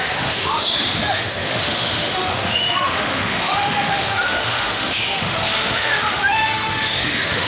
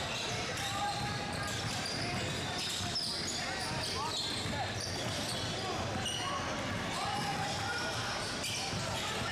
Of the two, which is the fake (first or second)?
first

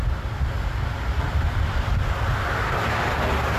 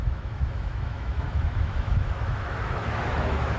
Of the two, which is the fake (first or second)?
second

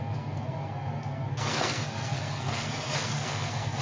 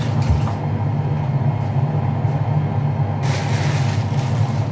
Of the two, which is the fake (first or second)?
first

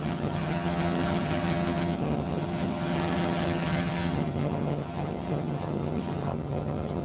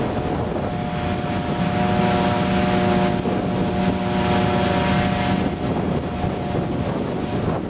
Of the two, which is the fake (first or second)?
first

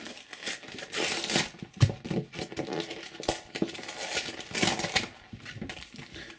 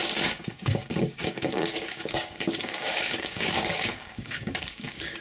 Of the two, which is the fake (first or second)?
second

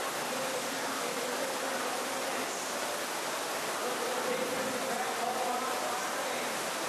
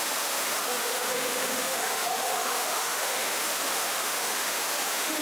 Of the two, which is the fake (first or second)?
second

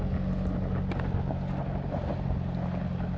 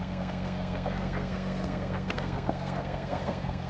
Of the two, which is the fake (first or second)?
second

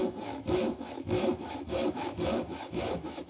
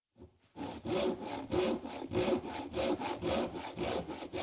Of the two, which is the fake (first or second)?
first